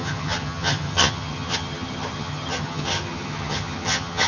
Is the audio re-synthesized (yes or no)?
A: yes